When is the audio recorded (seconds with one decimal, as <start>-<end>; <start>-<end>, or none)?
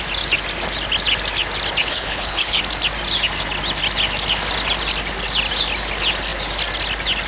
0.0-1.8; 2.6-7.3